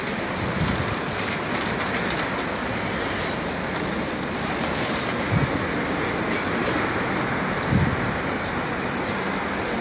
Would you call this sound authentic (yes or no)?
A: yes